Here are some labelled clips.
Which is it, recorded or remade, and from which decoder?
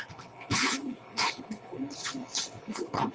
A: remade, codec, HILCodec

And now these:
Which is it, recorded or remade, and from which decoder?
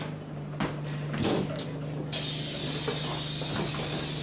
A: recorded